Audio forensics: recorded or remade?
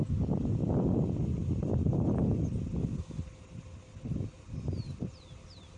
recorded